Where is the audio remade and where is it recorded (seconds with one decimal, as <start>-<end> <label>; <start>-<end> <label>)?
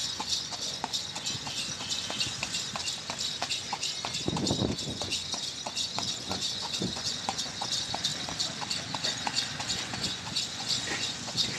0.0-2.8 remade; 2.8-3.5 recorded; 3.5-8.1 remade; 8.1-8.8 recorded; 8.8-11.6 remade